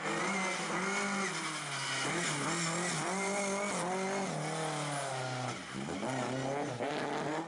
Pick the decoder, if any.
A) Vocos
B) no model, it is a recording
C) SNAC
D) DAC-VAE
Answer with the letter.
B